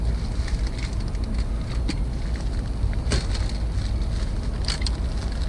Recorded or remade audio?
recorded